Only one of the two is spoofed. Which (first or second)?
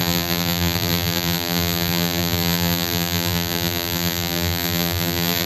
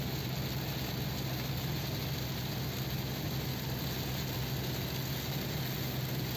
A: first